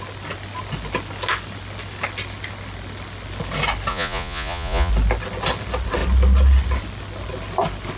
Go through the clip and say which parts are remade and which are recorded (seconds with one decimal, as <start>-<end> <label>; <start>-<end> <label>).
0.0-3.9 recorded; 3.9-4.9 remade; 4.9-8.0 recorded